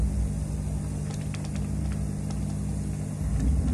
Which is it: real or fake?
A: real